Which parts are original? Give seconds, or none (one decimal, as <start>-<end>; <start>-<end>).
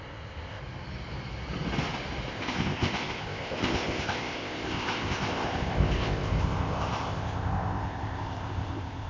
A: 0.6-2.3